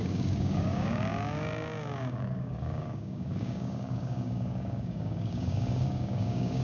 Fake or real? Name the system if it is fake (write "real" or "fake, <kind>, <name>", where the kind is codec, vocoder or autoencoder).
fake, codec, DAC